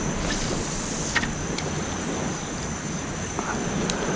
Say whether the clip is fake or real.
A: real